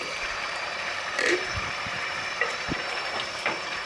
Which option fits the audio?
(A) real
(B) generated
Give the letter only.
B